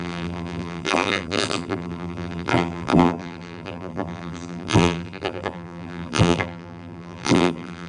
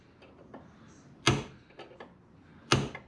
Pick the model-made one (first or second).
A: first